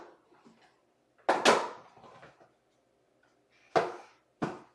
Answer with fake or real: real